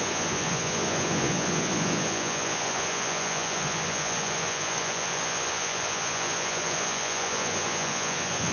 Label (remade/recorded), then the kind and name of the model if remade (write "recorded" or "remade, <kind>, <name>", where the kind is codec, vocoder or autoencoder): remade, vocoder, Vocos